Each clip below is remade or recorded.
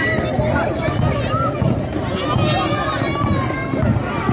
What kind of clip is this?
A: recorded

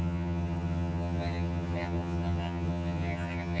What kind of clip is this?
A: remade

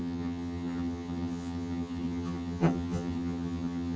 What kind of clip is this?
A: remade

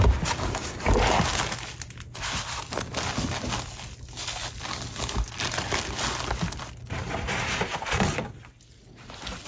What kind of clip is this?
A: recorded